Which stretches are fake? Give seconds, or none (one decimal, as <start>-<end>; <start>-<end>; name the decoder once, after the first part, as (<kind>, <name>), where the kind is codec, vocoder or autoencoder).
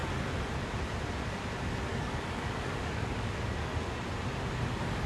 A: 1.9-3.7 (codec, DAC)